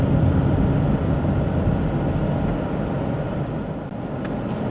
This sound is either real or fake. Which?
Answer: real